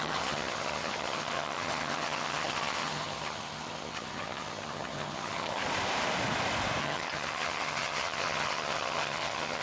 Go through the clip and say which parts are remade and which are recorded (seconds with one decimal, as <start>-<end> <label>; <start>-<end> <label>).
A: 0.0-5.6 remade; 5.6-6.8 recorded; 6.8-9.6 remade